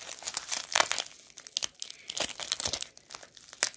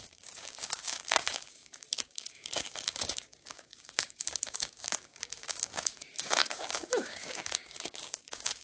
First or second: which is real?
first